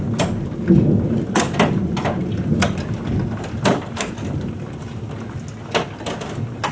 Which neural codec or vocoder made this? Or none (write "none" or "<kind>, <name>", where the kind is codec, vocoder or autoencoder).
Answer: none